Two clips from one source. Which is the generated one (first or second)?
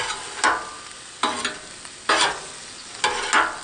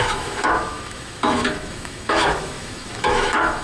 second